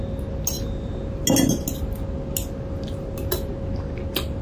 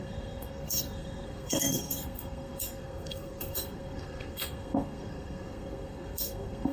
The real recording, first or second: first